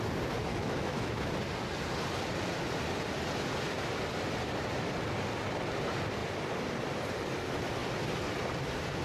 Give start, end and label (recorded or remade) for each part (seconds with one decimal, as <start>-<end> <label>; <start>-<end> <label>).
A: 0.0-0.5 recorded; 0.5-1.3 remade; 1.3-9.0 recorded